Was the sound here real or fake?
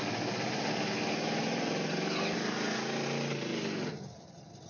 real